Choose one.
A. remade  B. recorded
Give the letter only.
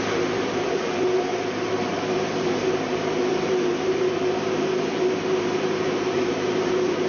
A